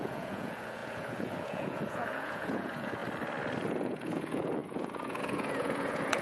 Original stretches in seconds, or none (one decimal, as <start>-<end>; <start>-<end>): 3.0-3.6